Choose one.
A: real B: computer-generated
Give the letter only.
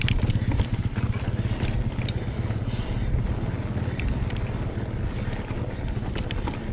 A